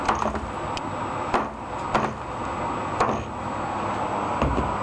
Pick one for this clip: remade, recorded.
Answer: recorded